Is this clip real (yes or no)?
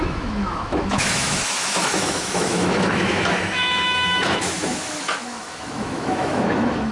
no